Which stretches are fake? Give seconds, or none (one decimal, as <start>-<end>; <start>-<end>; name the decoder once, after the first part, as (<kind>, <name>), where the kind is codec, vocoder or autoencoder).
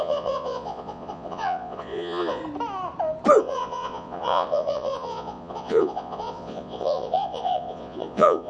0.0-2.4 (vocoder, Vocos); 3.4-8.5